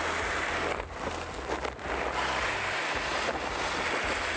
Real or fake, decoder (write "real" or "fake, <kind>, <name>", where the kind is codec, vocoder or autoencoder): real